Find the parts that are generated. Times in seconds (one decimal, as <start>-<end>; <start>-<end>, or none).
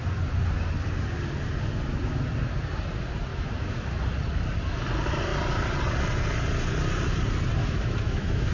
3.3-4.0; 7.6-8.5